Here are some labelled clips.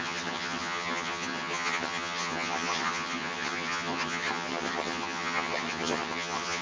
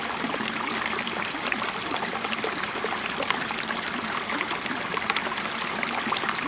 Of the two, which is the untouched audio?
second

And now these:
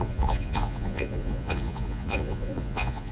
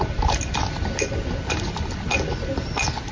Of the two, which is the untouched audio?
second